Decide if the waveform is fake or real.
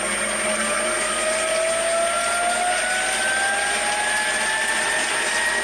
real